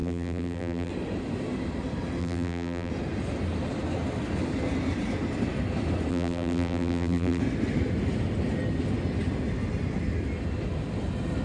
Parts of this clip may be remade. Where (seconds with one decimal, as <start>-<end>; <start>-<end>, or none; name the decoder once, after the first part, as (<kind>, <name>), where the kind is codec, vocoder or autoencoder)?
0.0-0.9 (vocoder, BigVGAN v2); 2.2-2.9; 6.1-7.4